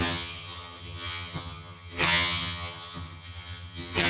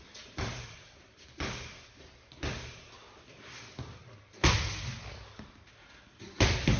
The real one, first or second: second